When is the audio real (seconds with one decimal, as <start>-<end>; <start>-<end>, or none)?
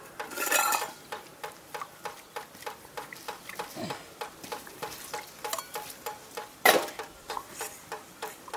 none